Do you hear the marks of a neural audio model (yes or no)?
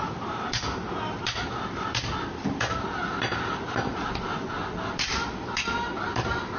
no